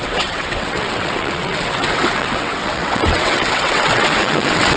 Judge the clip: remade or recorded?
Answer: remade